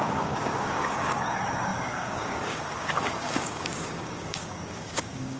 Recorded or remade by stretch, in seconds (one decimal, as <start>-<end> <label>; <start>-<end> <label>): 0.0-5.4 remade